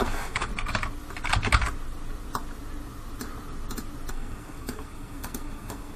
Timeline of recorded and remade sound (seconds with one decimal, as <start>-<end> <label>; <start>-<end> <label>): 0.0-0.5 remade; 0.5-4.1 recorded; 4.1-6.0 remade